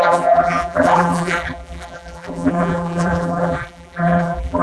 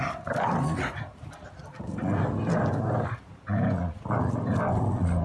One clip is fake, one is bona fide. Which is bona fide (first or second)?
second